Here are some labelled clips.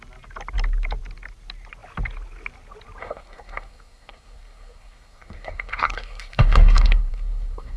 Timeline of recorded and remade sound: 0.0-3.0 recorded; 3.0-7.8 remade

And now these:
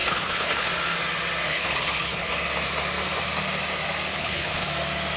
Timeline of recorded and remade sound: 0.0-0.7 remade; 0.7-1.5 recorded; 1.5-2.3 remade; 2.3-4.1 recorded; 4.1-4.7 remade; 4.7-5.2 recorded

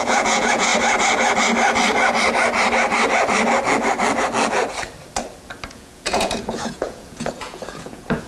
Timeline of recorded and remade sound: 0.0-0.7 remade; 0.7-5.7 recorded; 5.7-8.3 remade

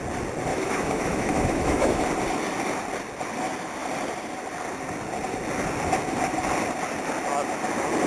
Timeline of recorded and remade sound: 0.0-0.5 recorded; 0.5-2.0 remade; 2.0-8.1 recorded

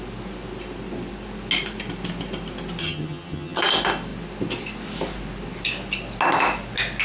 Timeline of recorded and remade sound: 0.0-2.8 recorded; 2.8-3.6 remade; 3.6-7.0 recorded